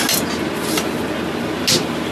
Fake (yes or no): no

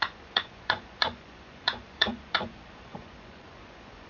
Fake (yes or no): yes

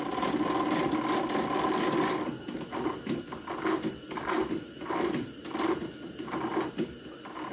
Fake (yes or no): no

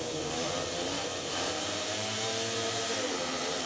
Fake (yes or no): yes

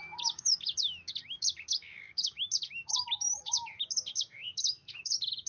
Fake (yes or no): yes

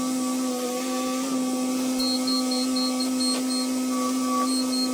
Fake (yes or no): no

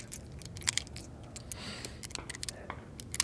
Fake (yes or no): no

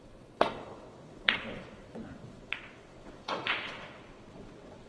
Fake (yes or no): yes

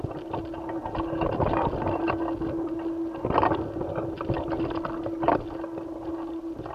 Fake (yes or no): no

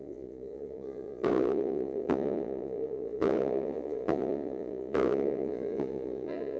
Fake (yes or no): yes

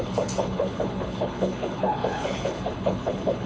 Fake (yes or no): yes